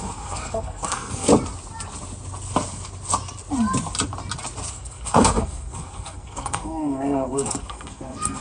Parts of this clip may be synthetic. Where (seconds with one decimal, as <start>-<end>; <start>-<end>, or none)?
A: 0.0-1.3; 4.7-8.4